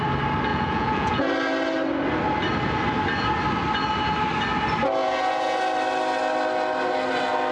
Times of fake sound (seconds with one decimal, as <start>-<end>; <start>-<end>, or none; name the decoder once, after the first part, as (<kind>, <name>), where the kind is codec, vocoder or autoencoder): 0.5-1.3 (vocoder, Vocos); 5.0-5.6